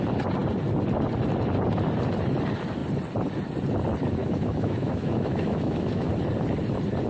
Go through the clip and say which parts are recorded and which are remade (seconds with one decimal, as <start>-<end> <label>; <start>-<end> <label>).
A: 0.0-4.2 recorded; 4.2-6.1 remade; 6.1-7.1 recorded